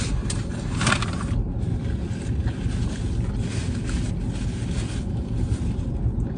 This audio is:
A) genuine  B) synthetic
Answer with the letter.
A